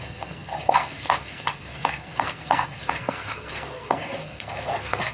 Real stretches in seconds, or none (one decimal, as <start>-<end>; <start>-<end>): none